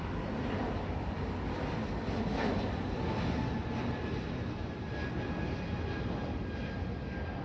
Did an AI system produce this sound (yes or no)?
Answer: no